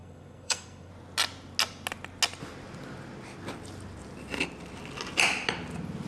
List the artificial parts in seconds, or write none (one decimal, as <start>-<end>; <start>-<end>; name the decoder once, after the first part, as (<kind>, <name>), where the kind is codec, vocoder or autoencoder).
0.0-0.9 (codec, SNAC)